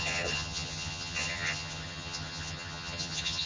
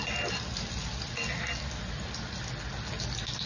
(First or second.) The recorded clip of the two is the second